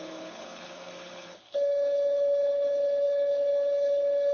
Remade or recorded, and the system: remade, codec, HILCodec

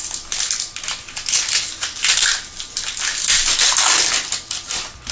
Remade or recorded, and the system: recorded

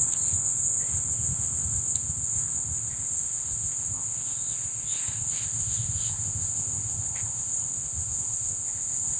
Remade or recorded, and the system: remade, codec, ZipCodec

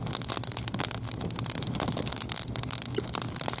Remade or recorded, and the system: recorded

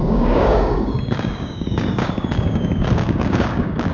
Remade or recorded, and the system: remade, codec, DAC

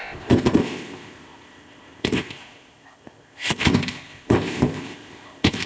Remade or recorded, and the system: remade, codec, ZipCodec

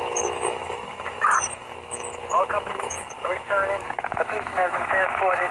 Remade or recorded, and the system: remade, autoencoder, DAC-VAE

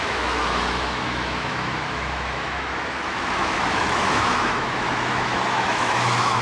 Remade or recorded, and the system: remade, autoencoder, DAC-VAE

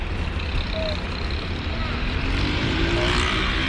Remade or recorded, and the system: recorded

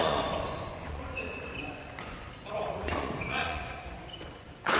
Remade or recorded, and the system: remade, vocoder, Vocos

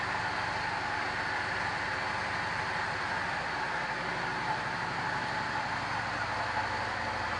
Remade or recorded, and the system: recorded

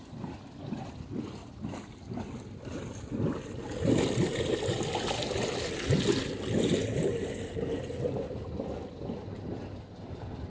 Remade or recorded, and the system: recorded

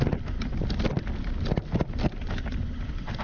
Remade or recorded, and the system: recorded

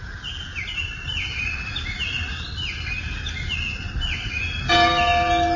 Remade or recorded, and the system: recorded